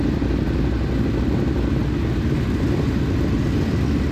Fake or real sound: real